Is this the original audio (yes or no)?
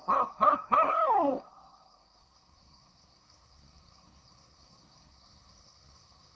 no